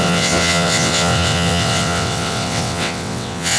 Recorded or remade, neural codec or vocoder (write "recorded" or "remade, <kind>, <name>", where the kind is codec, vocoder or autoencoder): remade, vocoder, WaveNeXt